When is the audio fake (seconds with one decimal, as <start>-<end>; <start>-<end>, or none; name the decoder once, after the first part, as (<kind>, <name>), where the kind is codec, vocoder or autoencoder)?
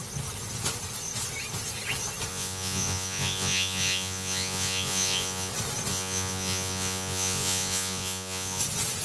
2.3-5.5 (vocoder, Vocos); 5.9-8.6